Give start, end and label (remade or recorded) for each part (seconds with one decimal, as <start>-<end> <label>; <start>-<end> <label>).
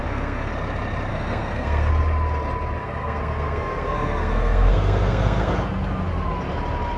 0.0-0.5 remade; 0.5-1.1 recorded; 1.1-1.9 remade; 1.9-2.8 recorded; 2.8-5.5 remade; 5.5-7.0 recorded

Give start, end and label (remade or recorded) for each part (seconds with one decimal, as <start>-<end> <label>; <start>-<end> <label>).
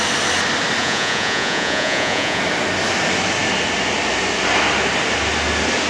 0.0-0.8 recorded; 0.8-2.4 remade; 2.4-5.9 recorded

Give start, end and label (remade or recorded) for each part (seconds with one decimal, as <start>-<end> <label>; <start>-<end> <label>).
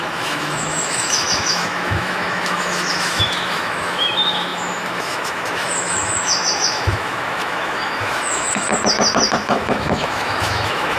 0.0-8.7 remade; 8.7-9.4 recorded; 9.4-11.0 remade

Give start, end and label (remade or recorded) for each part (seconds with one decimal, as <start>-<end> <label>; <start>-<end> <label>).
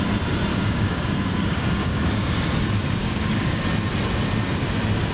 0.0-0.5 recorded; 0.5-2.6 remade; 2.6-3.0 recorded; 3.0-3.6 remade; 3.6-5.1 recorded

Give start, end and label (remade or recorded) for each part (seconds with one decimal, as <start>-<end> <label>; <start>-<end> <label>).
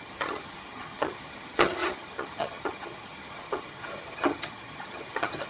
0.0-5.5 remade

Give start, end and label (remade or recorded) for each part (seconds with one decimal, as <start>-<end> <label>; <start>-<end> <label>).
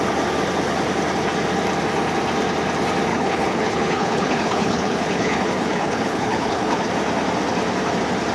0.0-3.1 recorded; 3.1-6.9 remade; 6.9-8.3 recorded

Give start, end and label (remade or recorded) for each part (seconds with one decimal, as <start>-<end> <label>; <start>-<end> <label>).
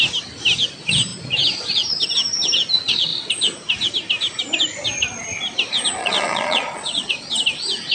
0.0-6.0 recorded; 6.0-7.3 remade; 7.3-7.9 recorded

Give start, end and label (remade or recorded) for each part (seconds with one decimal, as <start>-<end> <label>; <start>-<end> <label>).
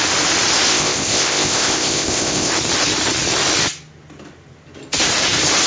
0.0-0.7 recorded; 0.7-2.5 remade; 2.5-5.7 recorded